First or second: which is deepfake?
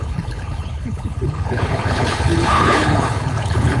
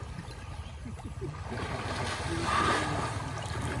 first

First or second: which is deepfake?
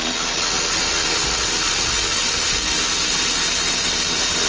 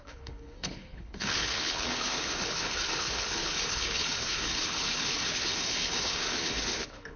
second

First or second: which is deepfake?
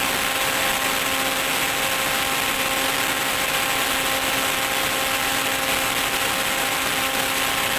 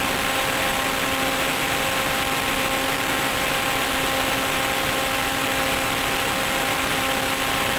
second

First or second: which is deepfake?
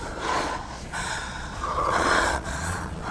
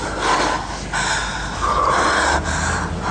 first